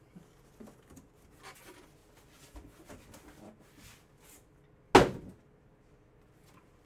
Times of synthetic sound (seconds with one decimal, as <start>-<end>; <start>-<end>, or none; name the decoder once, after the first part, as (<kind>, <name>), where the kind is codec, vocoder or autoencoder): none